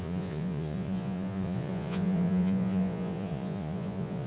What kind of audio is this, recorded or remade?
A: remade